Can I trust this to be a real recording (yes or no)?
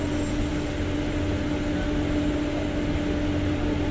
yes